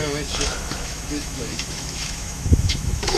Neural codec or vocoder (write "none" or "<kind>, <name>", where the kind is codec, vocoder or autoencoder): autoencoder, DAC-VAE